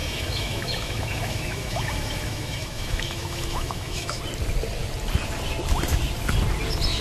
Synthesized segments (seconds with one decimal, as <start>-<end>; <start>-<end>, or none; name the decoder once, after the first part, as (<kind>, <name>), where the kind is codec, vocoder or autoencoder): 0.0-4.2 (autoencoder, DAC-VAE)